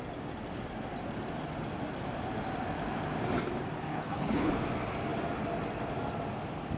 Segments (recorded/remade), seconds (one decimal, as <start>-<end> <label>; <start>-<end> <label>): 0.0-3.9 recorded; 3.9-4.5 remade; 4.5-6.8 recorded